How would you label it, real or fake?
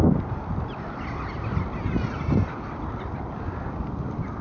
real